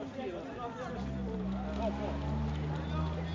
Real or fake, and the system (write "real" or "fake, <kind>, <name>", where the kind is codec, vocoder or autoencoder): real